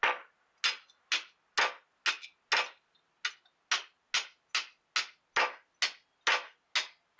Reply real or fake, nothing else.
real